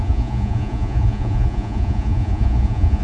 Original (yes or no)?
no